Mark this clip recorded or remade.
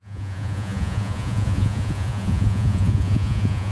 remade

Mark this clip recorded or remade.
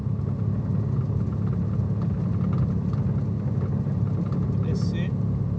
recorded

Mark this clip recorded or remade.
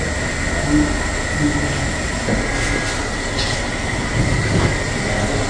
recorded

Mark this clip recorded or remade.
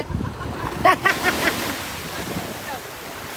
remade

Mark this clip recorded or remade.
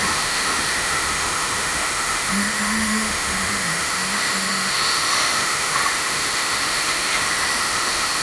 remade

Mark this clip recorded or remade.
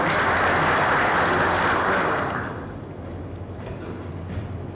recorded